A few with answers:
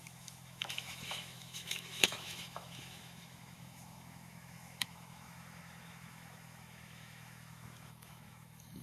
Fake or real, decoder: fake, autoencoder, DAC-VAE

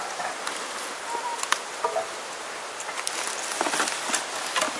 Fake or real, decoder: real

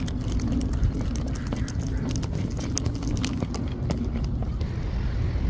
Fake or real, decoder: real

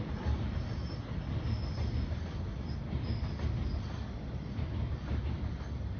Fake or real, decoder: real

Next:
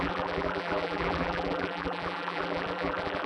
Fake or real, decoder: fake, vocoder, BigVGAN v2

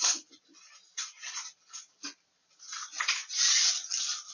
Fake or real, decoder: fake, vocoder, BigVGAN v2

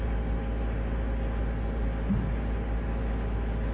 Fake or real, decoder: real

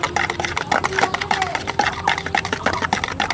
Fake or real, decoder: fake, vocoder, BigVGAN v2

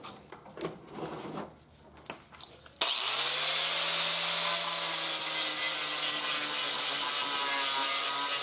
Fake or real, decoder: real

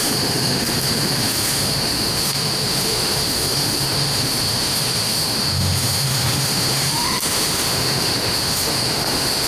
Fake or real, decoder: fake, autoencoder, DAC-VAE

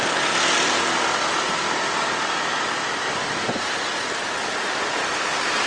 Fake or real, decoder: real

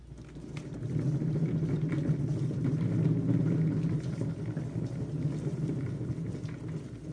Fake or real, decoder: real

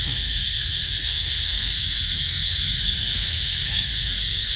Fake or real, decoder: fake, codec, SNAC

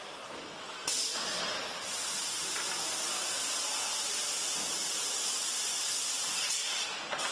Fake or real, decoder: real